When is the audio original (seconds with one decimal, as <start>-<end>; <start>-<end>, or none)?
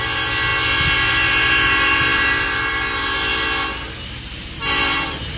0.0-5.4